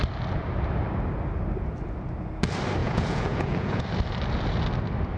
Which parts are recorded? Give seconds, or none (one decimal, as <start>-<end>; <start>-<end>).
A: 0.0-2.8; 3.8-5.2